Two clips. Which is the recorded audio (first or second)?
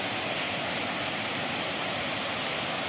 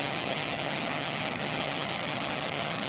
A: first